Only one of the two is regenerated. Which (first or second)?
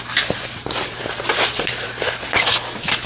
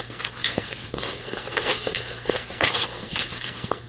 second